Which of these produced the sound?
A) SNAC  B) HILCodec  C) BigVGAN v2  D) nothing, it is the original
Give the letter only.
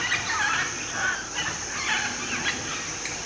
D